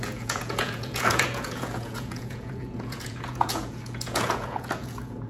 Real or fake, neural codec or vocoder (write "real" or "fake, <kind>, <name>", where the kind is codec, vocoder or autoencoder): fake, vocoder, Vocos